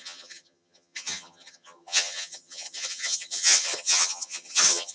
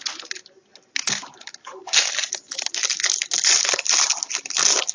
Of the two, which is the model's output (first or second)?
first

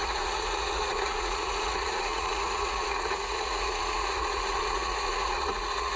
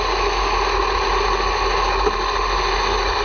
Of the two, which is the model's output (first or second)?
first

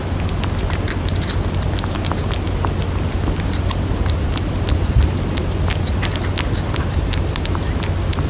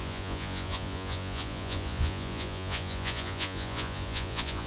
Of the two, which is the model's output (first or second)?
second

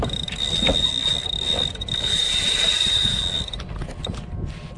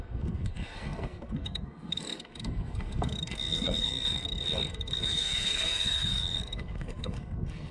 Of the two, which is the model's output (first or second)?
second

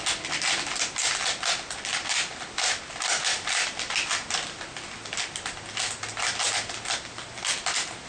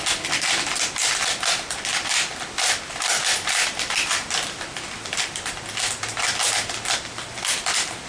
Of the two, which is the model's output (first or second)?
second